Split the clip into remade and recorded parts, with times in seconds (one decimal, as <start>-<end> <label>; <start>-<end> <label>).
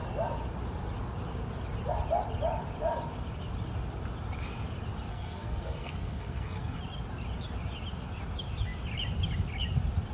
0.0-5.1 recorded; 5.1-6.8 remade; 6.8-10.1 recorded